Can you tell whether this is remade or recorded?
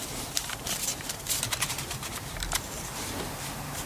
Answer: remade